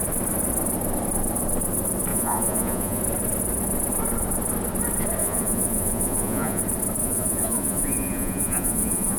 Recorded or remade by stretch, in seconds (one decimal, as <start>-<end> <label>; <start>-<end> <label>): 0.0-2.1 recorded; 2.1-3.0 remade; 3.0-5.2 recorded; 5.2-6.6 remade; 6.6-7.0 recorded; 7.0-9.2 remade